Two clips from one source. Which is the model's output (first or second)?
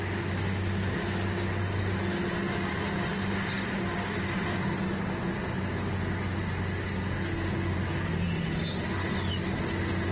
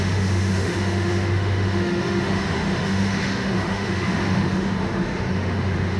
second